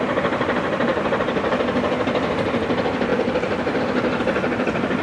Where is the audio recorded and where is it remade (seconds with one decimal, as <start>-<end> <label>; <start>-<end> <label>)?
0.0-5.0 remade